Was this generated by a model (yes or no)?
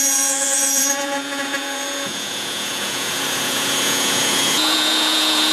yes